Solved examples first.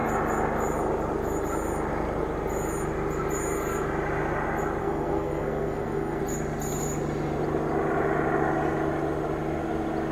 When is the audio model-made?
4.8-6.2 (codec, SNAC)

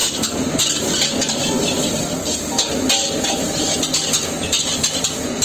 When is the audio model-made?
none

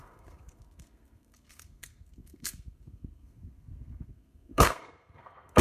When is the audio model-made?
0.0-5.6 (codec, SNAC)

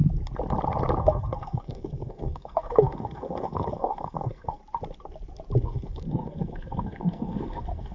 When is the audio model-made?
1.0-4.6 (codec, SNAC); 5.6-7.9

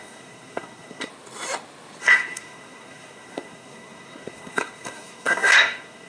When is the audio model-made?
0.0-1.1 (codec, SNAC); 2.0-6.1

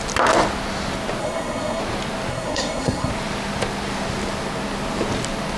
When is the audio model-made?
1.2-1.8 (codec, SNAC); 2.3-3.1

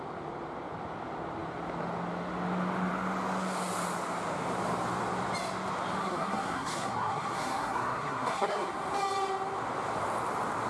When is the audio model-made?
6.0-8.7 (codec, SNAC)